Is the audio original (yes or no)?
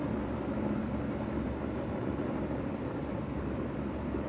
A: no